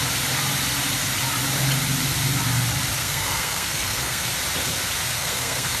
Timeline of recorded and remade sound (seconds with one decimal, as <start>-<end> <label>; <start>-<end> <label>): 0.0-3.0 recorded; 3.0-4.3 remade; 4.3-5.1 recorded; 5.1-5.8 remade

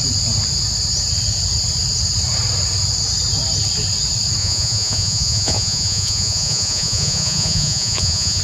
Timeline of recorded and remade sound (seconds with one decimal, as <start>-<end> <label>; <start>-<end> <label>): 0.0-4.4 recorded; 4.4-8.4 remade

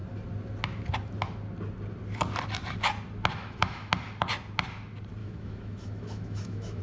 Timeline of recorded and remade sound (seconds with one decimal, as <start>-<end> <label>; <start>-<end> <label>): 0.0-3.3 recorded; 3.3-3.9 remade; 3.9-5.2 recorded; 5.2-6.8 remade

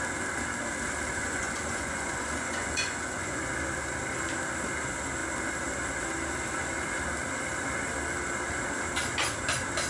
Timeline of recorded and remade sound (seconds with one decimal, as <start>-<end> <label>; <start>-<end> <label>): 0.0-1.2 recorded; 1.2-3.5 remade; 3.5-9.9 recorded

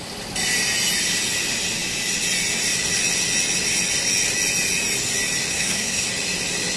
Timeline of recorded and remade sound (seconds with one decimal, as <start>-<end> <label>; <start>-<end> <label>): 0.0-5.5 recorded; 5.5-6.1 remade; 6.1-6.8 recorded